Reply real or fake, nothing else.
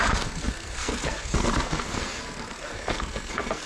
fake